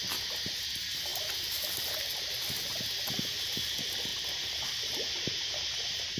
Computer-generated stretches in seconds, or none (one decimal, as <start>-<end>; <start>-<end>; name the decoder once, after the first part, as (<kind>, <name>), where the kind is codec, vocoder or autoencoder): none